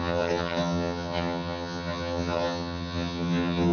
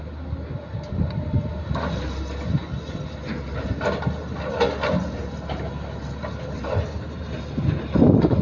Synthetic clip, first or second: first